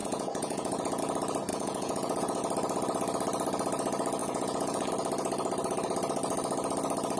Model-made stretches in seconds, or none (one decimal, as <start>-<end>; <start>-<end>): 0.0-1.0; 1.5-2.4; 4.2-4.9